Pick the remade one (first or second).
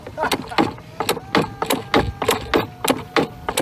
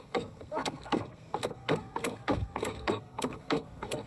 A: second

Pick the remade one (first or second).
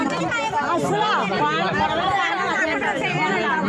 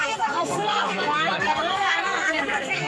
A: second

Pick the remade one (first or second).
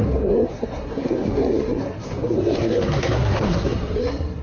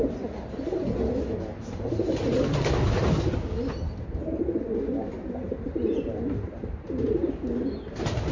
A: first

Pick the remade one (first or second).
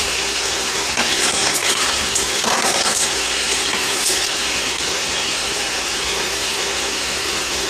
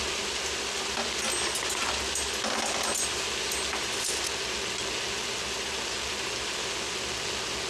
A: first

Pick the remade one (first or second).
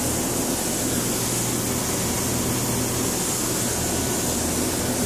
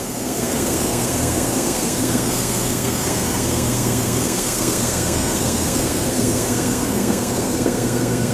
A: second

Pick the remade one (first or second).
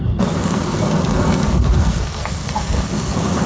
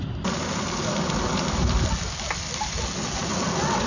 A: first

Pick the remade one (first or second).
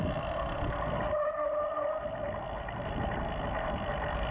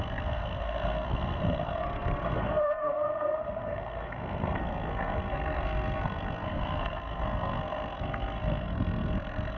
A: second